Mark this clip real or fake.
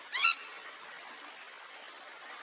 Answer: fake